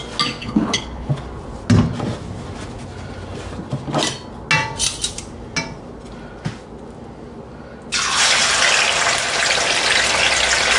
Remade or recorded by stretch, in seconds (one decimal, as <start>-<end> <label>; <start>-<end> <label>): 0.0-0.4 recorded; 0.4-1.1 remade; 1.1-10.8 recorded